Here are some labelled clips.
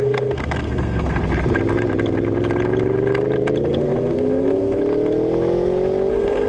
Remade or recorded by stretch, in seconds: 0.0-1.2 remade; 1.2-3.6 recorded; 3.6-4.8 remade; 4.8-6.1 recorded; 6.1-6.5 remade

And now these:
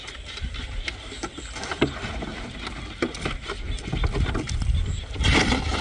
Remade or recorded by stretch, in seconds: 0.0-5.8 recorded

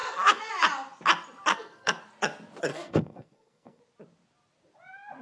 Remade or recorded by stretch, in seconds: 0.0-0.5 remade; 0.5-1.5 recorded; 1.5-2.0 remade; 2.0-2.7 recorded; 2.7-3.8 remade; 3.8-5.2 recorded

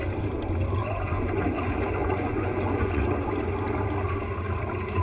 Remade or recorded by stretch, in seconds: 0.0-0.8 recorded; 0.8-1.4 remade; 1.4-2.0 recorded; 2.0-3.0 remade; 3.0-5.0 recorded

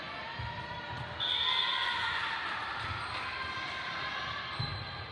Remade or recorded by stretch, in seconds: 0.0-1.8 recorded; 1.8-2.3 remade; 2.3-5.1 recorded

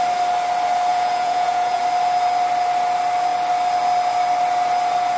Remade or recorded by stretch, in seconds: 0.0-0.9 recorded; 0.9-1.8 remade; 1.8-5.2 recorded

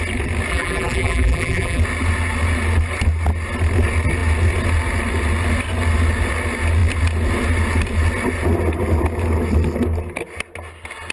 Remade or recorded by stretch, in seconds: 0.0-0.5 recorded; 0.5-1.8 remade; 1.8-11.1 recorded

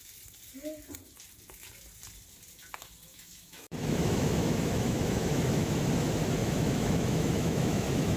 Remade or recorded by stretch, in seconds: 0.0-3.1 recorded; 3.1-5.9 remade; 5.9-6.4 recorded; 6.4-8.2 remade